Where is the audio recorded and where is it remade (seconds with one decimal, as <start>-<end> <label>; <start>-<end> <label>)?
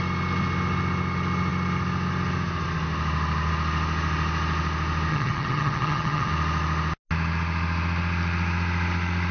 0.0-5.1 recorded; 5.1-6.3 remade; 6.3-9.3 recorded